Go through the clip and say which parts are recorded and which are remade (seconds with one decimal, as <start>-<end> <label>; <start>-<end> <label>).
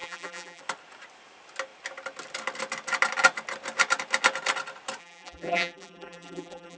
0.0-0.6 remade; 0.6-5.0 recorded; 5.0-6.8 remade